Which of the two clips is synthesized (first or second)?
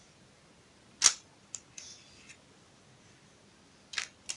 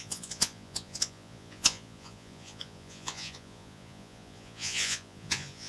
second